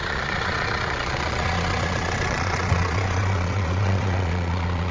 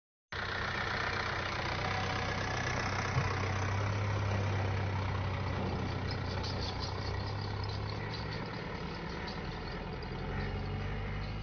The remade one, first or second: first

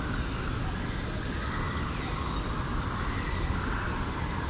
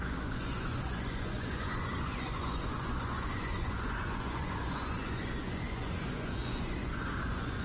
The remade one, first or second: second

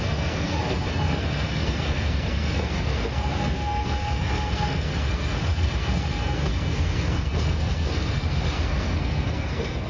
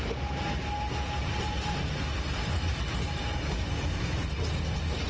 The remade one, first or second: first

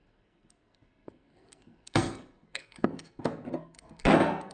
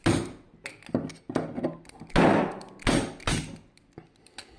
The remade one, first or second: first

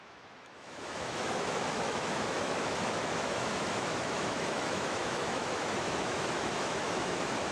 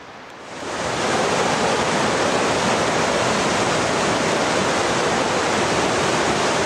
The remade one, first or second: first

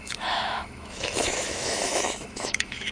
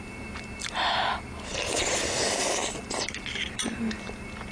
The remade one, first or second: first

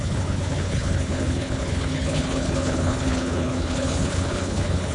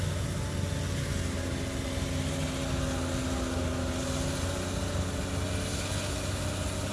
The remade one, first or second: first